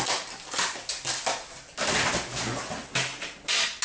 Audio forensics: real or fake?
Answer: real